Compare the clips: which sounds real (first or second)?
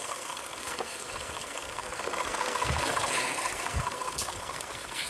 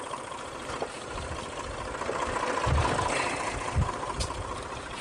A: second